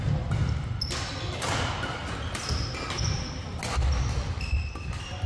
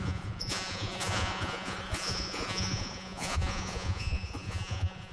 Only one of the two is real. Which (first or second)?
first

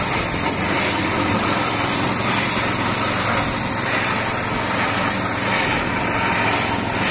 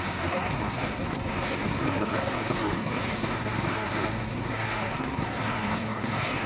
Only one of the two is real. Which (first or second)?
first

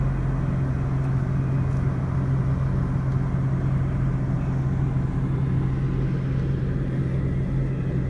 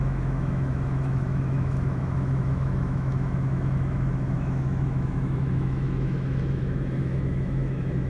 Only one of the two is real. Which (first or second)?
first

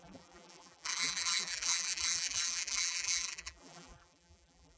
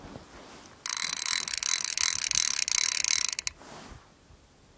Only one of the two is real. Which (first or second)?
second